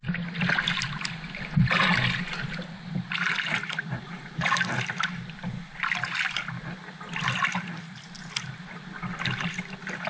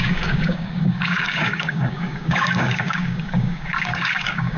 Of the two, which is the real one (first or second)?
first